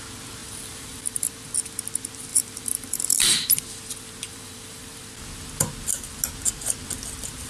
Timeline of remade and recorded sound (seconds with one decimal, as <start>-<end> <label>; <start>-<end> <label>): 0.0-0.4 recorded; 0.4-1.7 remade; 1.7-2.3 recorded; 2.3-3.5 remade; 3.5-4.3 recorded; 4.3-5.1 remade; 5.1-7.5 recorded

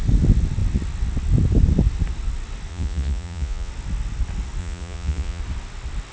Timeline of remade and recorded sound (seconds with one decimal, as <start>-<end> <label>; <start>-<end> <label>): 0.0-2.7 recorded; 2.7-3.7 remade; 3.7-4.6 recorded; 4.6-5.4 remade; 5.4-6.1 recorded